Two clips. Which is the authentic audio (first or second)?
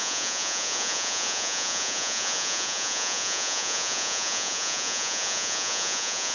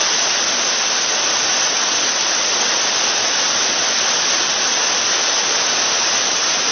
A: second